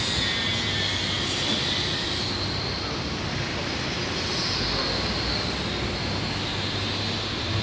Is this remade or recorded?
recorded